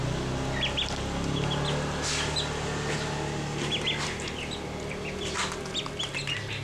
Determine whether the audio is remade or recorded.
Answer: recorded